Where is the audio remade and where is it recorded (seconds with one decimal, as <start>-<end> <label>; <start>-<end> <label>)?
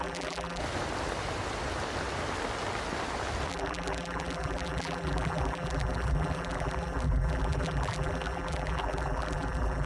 0.0-0.6 remade; 0.6-3.5 recorded; 3.5-9.9 remade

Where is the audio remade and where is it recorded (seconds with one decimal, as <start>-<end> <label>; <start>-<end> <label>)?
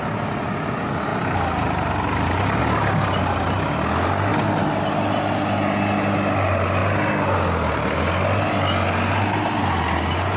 0.0-10.4 recorded